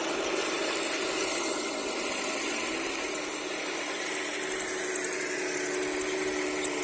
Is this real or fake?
real